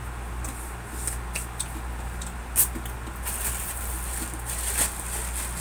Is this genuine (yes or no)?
yes